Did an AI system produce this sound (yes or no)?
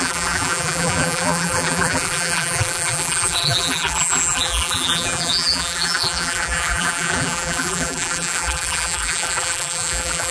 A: yes